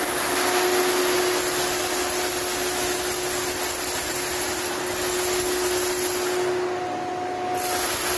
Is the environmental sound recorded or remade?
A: recorded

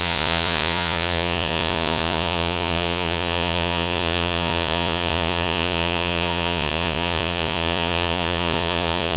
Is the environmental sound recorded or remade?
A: remade